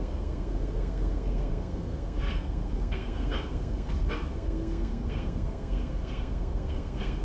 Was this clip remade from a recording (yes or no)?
yes